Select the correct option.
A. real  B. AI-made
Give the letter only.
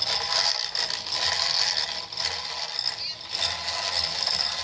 A